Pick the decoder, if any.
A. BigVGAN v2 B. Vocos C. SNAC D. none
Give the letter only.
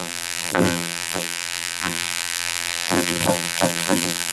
A